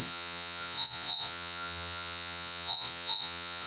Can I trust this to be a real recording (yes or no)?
no